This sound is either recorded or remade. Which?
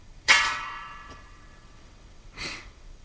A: remade